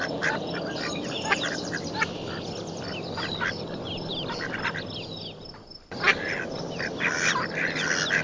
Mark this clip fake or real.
fake